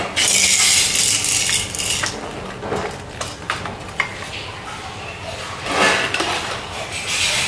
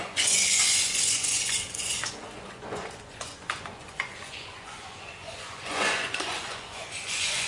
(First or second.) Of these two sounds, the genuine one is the first